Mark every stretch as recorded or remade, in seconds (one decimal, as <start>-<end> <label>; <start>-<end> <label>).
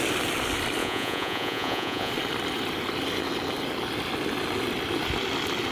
0.0-0.8 recorded; 0.8-2.1 remade; 2.1-5.7 recorded